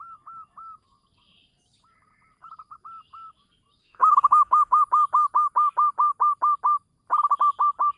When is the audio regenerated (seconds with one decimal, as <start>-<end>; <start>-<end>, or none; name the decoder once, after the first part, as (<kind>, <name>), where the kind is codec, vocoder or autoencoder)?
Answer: 3.8-4.8 (autoencoder, DAC-VAE)